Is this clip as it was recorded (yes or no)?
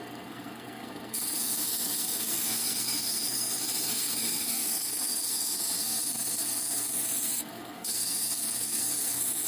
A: no